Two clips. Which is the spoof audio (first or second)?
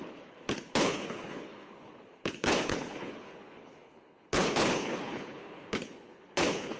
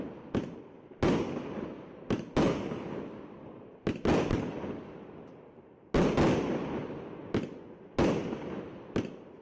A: first